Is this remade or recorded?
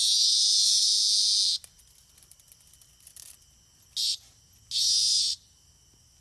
recorded